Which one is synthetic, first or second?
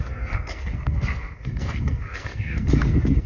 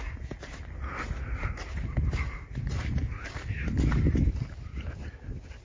first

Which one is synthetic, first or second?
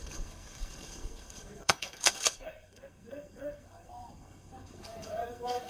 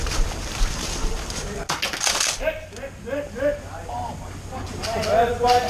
first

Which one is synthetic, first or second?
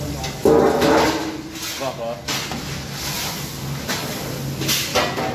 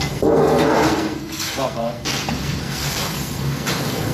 second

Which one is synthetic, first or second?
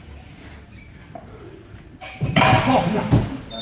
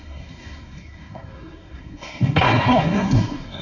second